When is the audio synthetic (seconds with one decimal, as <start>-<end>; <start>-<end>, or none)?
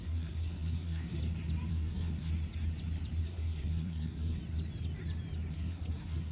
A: 0.0-1.2; 1.7-2.3; 3.2-4.4; 5.5-6.3